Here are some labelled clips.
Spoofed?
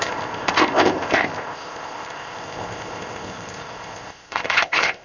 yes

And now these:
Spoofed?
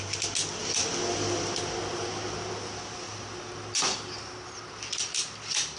no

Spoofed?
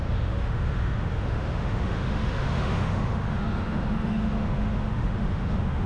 yes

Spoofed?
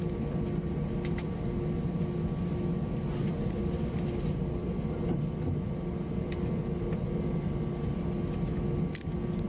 no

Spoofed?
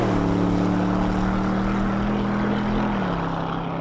no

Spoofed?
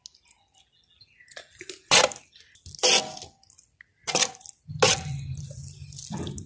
no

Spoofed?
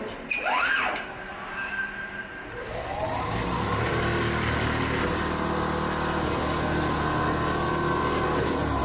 no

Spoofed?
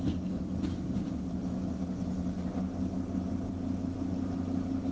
no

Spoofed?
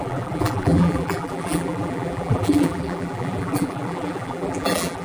yes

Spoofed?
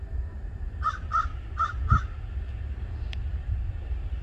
no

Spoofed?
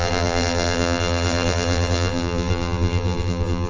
yes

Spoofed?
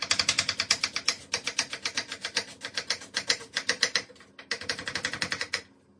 no